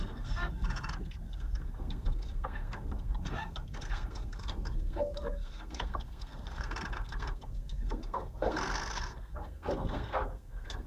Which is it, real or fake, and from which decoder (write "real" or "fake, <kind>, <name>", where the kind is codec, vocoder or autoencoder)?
fake, codec, SNAC